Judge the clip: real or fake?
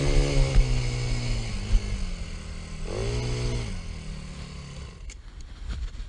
real